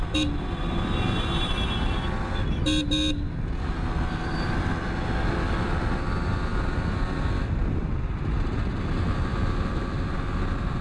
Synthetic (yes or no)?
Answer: no